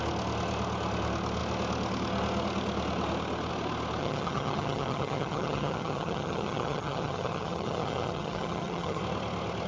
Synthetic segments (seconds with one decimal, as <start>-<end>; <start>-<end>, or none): 4.0-9.0